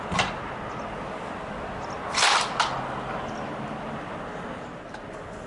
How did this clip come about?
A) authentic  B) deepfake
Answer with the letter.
A